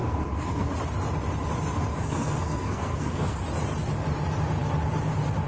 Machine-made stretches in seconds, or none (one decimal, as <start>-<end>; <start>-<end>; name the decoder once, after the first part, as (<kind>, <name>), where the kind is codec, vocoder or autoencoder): 0.0-0.7 (codec, SNAC); 1.9-3.4